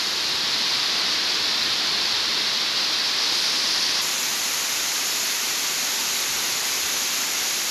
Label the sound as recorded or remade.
remade